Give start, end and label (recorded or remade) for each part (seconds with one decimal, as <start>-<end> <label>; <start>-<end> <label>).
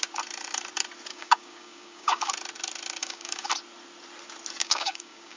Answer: 0.0-1.1 recorded; 1.1-2.3 remade; 2.3-3.0 recorded; 3.0-3.5 remade; 3.5-4.6 recorded; 4.6-5.4 remade